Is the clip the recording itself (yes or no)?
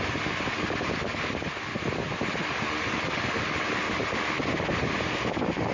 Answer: yes